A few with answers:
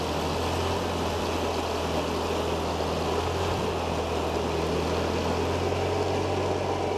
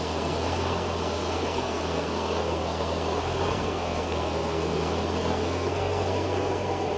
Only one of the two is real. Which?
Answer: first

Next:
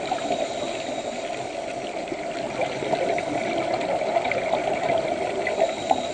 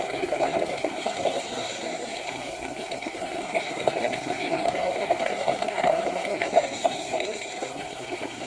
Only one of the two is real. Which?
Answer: first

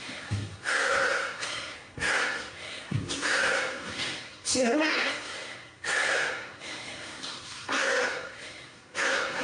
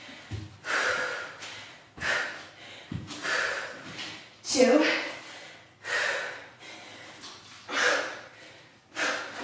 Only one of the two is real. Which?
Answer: second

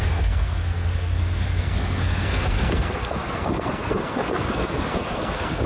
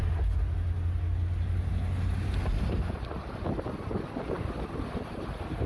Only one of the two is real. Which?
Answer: second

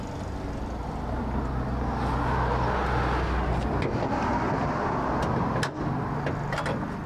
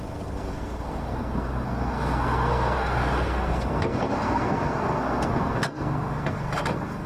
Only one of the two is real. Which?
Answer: first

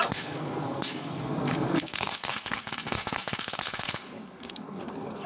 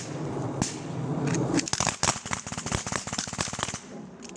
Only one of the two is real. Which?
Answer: second